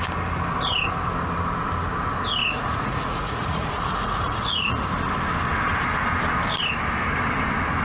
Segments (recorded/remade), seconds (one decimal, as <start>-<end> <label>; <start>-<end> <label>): 0.0-2.4 recorded; 2.4-4.9 remade; 4.9-7.8 recorded